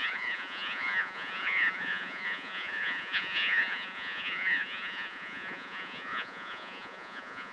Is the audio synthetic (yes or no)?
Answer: yes